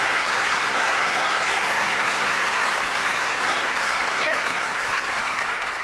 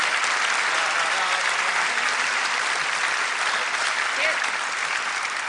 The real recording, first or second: second